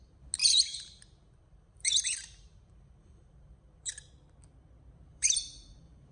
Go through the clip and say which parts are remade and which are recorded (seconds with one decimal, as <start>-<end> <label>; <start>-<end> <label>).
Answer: 0.0-0.4 recorded; 0.4-4.1 remade; 4.1-5.1 recorded; 5.1-6.1 remade